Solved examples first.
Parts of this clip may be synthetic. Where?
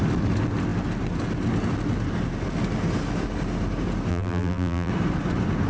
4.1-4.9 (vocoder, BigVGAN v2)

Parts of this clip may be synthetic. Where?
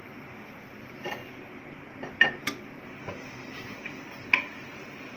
none